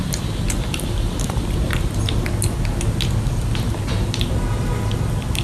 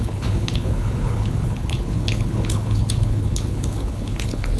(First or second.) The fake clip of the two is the second